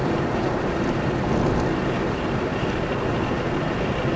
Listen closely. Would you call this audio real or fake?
real